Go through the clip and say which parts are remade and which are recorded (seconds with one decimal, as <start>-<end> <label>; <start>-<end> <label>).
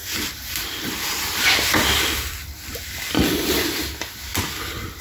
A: 0.0-3.0 remade; 3.0-5.0 recorded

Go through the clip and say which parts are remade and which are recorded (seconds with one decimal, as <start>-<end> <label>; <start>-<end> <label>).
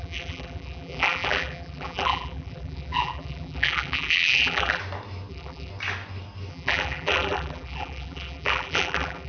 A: 0.0-4.8 remade; 4.8-5.3 recorded; 5.3-5.7 remade; 5.7-6.5 recorded; 6.5-9.3 remade